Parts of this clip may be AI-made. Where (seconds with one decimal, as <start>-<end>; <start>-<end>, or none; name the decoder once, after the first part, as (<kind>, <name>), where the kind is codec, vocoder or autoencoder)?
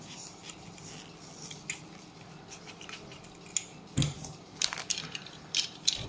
0.0-0.4 (vocoder, BigVGAN v2); 4.1-6.1